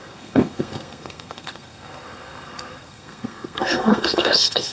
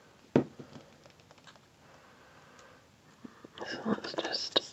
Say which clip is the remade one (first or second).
first